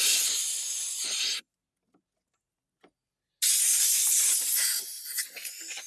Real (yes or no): yes